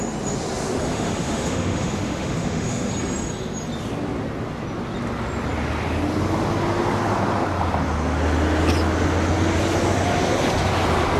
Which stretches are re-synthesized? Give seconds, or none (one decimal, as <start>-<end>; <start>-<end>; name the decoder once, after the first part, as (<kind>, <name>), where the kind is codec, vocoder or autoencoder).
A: 0.8-2.9 (autoencoder, DAC-VAE)